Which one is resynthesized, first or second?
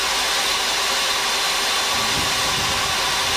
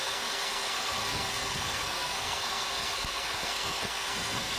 second